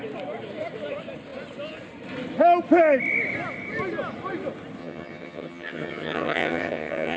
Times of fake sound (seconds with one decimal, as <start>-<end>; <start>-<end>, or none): 4.8-7.2